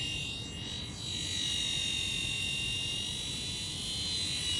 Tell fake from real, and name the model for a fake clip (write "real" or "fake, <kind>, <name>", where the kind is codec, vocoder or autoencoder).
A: real